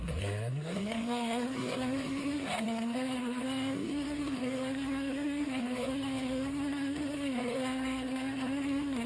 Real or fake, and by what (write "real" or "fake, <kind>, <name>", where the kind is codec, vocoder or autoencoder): fake, codec, SNAC